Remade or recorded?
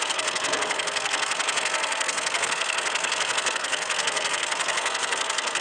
remade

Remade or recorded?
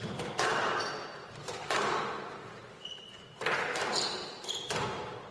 recorded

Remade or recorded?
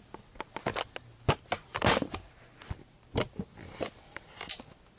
recorded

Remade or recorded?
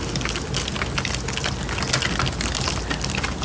recorded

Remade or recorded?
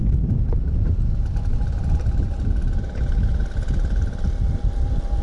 recorded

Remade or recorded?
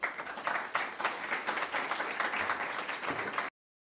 recorded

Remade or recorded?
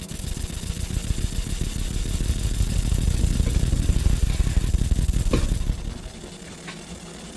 recorded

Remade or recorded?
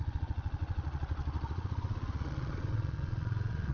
remade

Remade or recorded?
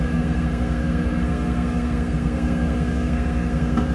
remade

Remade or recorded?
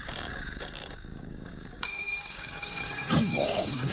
remade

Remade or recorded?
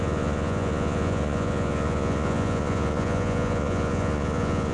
remade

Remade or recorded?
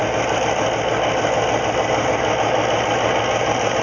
recorded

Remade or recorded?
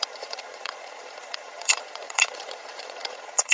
remade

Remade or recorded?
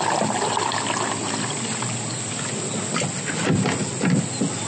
recorded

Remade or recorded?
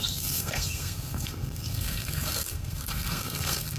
remade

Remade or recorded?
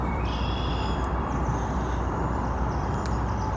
remade